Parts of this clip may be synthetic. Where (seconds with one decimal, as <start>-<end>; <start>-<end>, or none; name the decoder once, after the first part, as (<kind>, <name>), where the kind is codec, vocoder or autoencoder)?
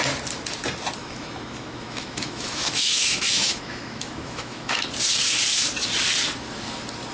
1.0-4.8 (autoencoder, DAC-VAE)